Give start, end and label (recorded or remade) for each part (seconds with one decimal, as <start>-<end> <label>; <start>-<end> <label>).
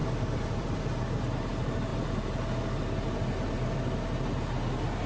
0.0-0.8 remade; 0.8-5.1 recorded